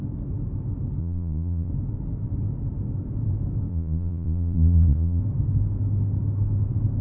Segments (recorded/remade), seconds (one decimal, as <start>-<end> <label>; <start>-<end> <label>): 0.0-1.0 recorded; 1.0-1.7 remade; 1.7-3.7 recorded; 3.7-5.2 remade; 5.2-7.0 recorded